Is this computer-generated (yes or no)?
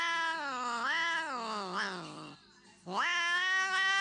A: no